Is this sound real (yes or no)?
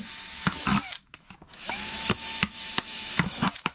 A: no